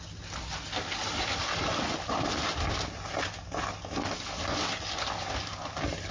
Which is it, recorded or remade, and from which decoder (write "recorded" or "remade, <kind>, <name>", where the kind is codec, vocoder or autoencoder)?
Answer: recorded